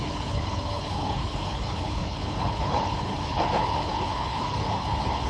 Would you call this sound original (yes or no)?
no